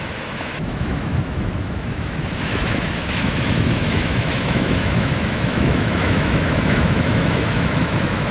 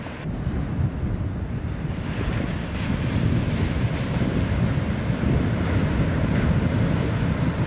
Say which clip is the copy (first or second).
first